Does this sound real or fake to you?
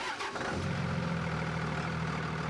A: real